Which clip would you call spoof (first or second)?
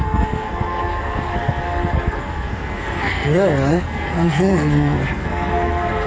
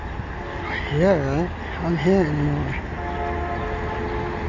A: first